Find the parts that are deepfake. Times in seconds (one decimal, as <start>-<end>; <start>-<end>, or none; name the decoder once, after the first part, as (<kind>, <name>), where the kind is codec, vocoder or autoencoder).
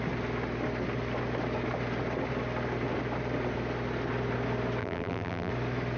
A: 4.8-5.5 (vocoder, BigVGAN v2)